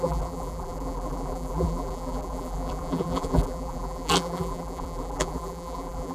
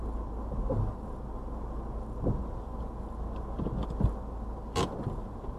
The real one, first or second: second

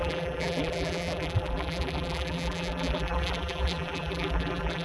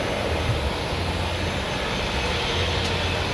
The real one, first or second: second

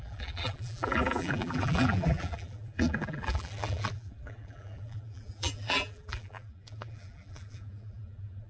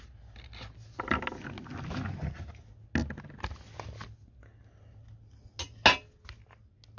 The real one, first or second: second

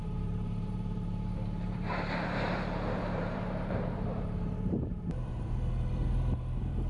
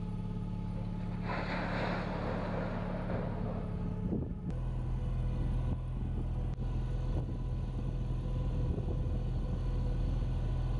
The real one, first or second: second